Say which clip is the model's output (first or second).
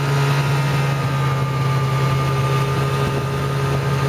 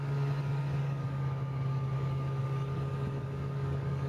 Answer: second